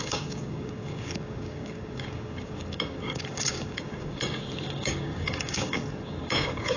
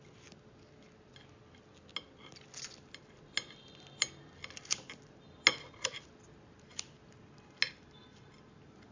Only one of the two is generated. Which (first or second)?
first